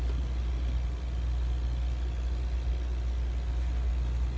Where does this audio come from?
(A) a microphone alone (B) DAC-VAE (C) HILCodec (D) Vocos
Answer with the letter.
A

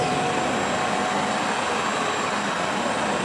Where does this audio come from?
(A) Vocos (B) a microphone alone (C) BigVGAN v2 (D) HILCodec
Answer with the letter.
B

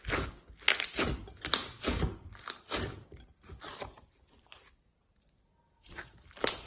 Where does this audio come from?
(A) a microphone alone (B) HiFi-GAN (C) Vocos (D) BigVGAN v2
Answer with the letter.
A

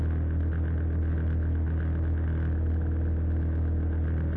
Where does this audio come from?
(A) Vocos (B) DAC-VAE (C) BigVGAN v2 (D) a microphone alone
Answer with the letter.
D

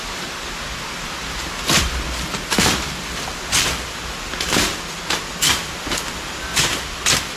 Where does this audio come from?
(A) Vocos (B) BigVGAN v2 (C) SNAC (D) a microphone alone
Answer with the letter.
D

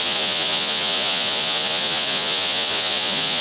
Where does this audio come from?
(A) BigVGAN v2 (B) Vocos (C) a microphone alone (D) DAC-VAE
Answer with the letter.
B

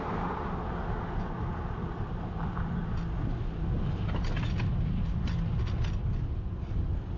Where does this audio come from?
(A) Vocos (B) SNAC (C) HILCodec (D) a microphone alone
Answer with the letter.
D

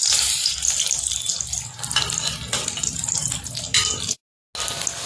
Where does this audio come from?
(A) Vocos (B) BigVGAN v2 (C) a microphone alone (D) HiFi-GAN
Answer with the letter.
C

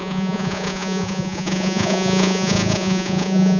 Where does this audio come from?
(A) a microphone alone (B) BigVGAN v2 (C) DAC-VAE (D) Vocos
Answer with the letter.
D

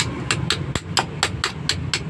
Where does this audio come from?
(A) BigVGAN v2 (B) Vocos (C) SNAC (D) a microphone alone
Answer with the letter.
D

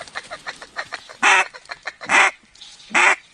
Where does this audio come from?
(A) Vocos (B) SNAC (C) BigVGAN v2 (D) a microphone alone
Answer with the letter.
A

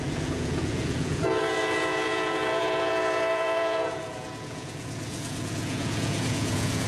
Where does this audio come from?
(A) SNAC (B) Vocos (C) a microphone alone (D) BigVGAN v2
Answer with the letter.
B